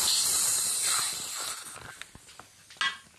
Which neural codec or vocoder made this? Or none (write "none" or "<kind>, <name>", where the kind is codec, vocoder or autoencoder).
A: none